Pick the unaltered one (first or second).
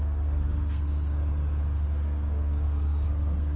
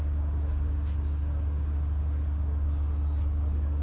second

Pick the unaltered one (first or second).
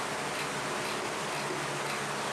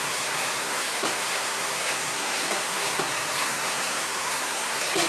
first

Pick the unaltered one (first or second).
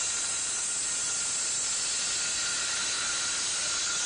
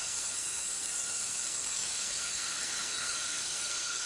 first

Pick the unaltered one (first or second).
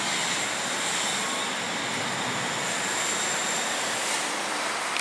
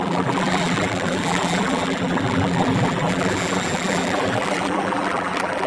first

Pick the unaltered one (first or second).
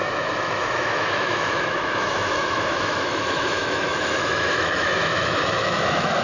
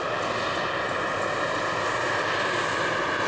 second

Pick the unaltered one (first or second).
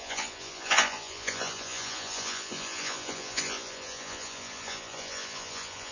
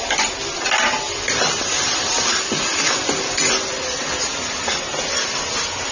second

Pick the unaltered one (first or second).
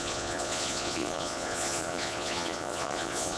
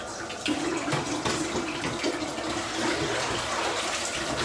second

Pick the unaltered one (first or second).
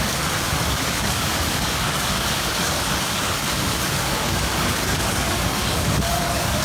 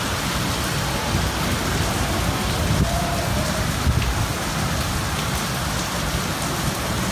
second